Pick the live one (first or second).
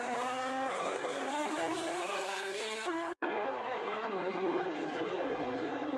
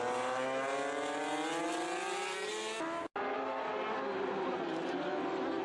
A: second